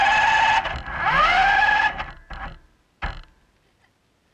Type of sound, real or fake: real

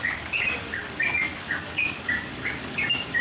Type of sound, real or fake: fake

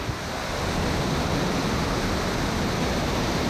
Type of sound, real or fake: real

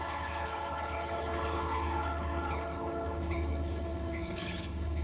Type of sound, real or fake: fake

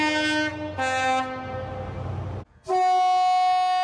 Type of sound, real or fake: real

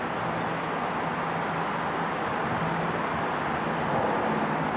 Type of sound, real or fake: real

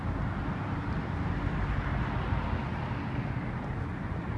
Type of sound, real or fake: real